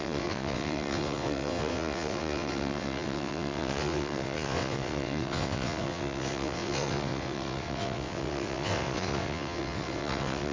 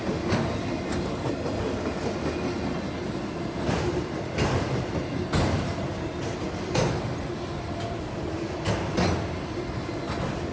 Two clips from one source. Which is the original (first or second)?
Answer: second